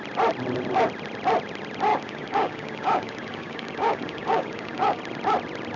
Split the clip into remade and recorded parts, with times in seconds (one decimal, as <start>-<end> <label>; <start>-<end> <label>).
0.0-1.9 recorded; 1.9-5.0 remade; 5.0-5.8 recorded